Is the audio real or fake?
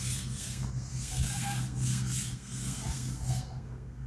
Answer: fake